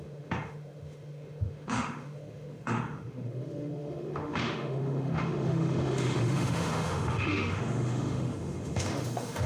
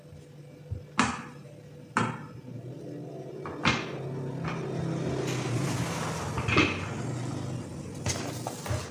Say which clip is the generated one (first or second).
first